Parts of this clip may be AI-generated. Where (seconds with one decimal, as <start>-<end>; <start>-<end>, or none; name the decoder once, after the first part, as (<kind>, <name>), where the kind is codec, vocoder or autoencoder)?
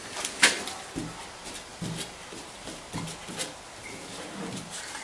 none